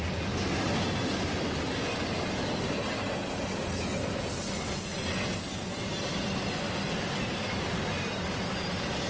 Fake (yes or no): no